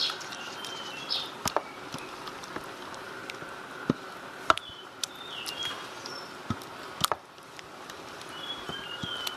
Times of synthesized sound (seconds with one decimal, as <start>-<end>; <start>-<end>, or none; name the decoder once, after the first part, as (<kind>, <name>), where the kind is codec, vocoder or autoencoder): 0.0-3.2 (vocoder, BigVGAN v2); 4.1-6.4; 7.0-9.4